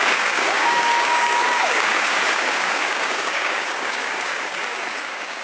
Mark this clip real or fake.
fake